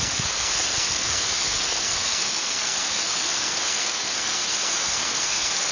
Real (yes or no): no